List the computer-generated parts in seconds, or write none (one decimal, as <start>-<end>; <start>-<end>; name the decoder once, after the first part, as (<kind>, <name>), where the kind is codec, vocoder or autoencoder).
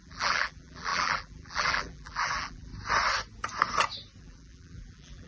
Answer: 0.0-2.7 (vocoder, BigVGAN v2); 4.2-5.3